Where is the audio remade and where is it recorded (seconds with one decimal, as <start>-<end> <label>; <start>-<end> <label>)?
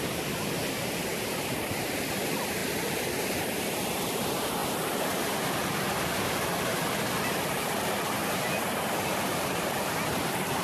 0.0-1.1 recorded; 1.1-1.8 remade; 1.8-2.6 recorded; 2.6-3.2 remade; 3.2-10.6 recorded